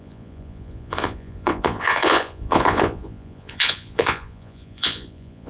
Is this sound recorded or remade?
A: remade